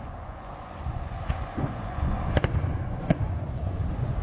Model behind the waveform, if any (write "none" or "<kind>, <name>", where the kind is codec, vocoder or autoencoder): vocoder, Vocos